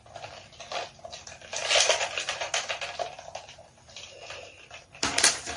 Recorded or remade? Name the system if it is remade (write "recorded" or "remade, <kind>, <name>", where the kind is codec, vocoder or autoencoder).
recorded